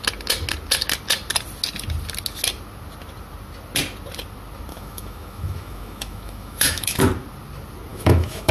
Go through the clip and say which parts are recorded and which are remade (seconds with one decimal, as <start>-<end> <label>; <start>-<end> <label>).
0.0-4.7 recorded; 4.7-7.0 remade; 7.0-7.9 recorded; 7.9-8.5 remade